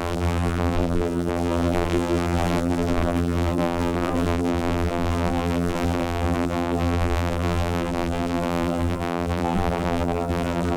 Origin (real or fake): fake